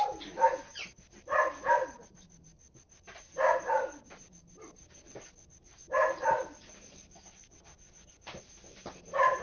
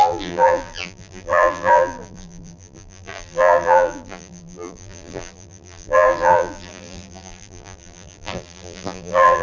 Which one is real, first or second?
first